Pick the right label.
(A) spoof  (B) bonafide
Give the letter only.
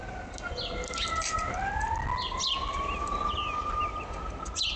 B